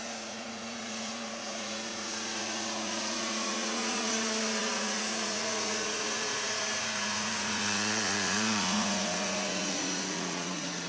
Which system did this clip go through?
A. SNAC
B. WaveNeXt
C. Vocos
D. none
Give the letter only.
C